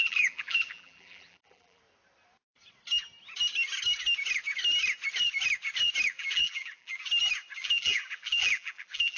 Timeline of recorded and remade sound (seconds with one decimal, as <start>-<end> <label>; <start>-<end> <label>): 0.0-1.8 remade; 1.8-6.2 recorded; 6.2-7.0 remade; 7.0-7.6 recorded; 7.6-9.2 remade